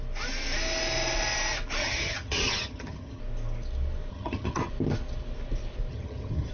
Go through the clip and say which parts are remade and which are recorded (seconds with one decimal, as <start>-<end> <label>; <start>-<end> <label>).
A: 0.0-1.8 recorded; 1.8-3.2 remade; 3.2-4.1 recorded; 4.1-4.7 remade; 4.7-5.9 recorded; 5.9-6.5 remade